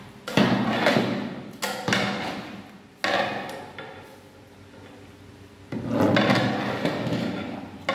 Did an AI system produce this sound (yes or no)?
no